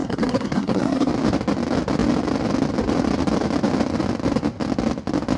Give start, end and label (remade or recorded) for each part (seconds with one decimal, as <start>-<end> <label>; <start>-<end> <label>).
0.0-1.1 remade; 1.1-5.4 recorded